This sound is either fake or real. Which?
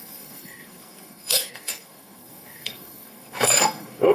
fake